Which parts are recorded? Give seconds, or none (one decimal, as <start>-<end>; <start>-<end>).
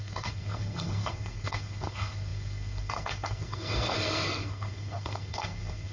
none